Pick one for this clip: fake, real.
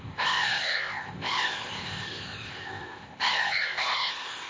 fake